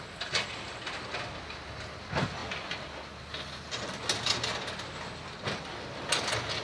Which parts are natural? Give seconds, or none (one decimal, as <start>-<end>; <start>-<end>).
0.0-6.6